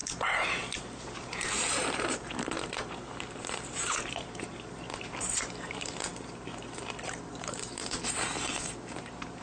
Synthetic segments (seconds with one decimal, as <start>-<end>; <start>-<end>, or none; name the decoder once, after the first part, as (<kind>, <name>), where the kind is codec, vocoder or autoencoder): 0.0-9.4 (vocoder, BigVGAN v2)